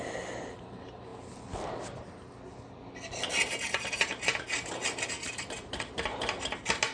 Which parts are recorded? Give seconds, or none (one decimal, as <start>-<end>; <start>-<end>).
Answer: 0.0-6.9